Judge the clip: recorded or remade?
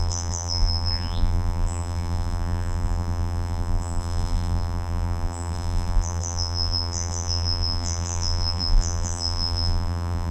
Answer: remade